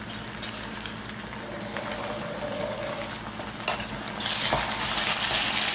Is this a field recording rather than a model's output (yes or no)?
yes